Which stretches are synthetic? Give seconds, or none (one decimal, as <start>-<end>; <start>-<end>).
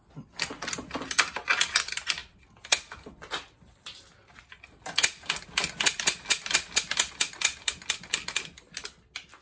none